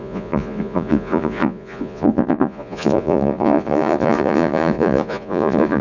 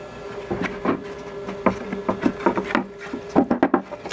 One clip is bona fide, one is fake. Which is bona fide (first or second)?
second